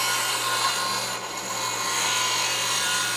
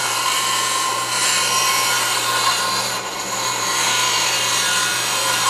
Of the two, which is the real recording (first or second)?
first